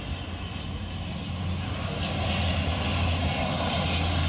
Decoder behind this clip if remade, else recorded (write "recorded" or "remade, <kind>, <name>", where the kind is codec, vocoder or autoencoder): recorded